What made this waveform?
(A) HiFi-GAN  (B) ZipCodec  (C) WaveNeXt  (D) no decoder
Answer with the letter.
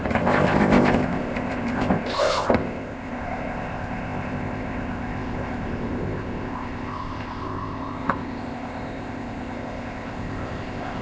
B